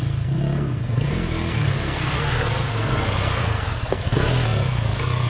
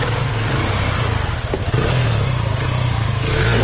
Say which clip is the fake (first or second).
first